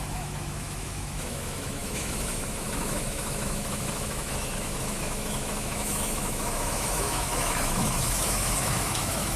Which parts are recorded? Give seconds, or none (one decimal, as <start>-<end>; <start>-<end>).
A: none

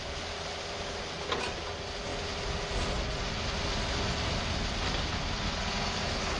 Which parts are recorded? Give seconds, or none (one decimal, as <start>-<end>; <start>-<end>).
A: 0.0-6.4

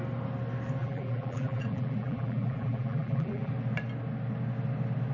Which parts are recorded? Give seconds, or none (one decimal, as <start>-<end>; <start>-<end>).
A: 0.0-0.8; 3.5-5.1

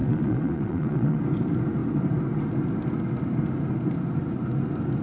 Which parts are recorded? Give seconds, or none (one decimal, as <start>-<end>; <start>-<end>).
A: 1.2-5.0

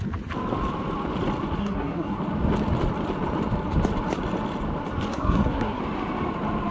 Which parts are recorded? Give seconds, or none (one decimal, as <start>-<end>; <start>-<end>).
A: 0.0-1.6; 2.2-5.1; 5.8-6.7